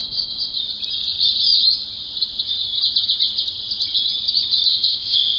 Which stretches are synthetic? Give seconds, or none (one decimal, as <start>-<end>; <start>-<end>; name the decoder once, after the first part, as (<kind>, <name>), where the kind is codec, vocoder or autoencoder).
0.0-0.6 (codec, ZipCodec); 4.7-5.4